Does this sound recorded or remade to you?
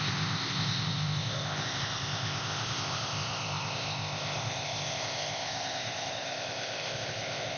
remade